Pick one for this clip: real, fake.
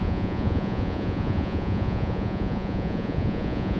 fake